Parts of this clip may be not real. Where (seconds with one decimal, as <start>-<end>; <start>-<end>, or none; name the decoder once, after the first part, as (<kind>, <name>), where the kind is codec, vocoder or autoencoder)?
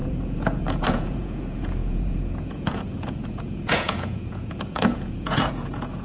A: 0.0-6.0 (vocoder, Vocos)